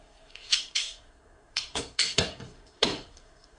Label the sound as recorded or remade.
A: remade